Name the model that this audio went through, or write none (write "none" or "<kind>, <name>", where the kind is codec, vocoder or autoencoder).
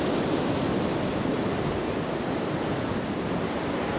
none